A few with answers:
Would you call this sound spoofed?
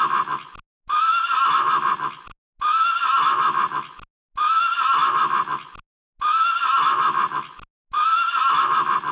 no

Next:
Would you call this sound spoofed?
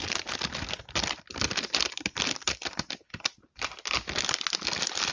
no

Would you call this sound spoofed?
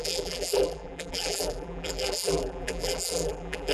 yes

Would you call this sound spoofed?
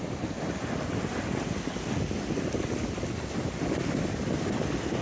no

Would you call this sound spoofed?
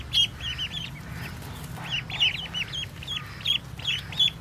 no